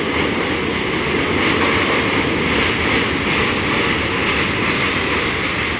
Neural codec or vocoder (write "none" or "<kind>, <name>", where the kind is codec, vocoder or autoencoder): none